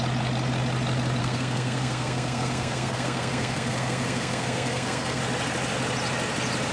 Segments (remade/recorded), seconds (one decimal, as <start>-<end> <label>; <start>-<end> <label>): 0.0-1.2 recorded; 1.2-5.2 remade; 5.2-6.7 recorded